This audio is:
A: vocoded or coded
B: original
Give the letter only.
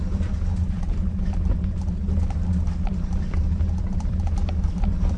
B